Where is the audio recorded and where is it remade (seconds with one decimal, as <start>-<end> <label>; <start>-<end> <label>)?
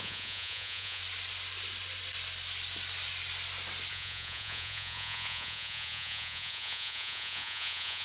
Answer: 0.0-1.0 remade; 1.0-3.9 recorded; 3.9-8.0 remade